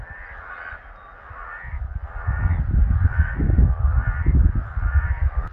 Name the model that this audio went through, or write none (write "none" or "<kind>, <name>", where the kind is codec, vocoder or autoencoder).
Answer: none